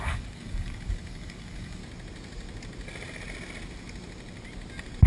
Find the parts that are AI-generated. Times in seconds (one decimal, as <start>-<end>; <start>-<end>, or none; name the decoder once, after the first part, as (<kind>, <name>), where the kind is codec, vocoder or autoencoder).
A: 0.0-1.8 (codec, DAC)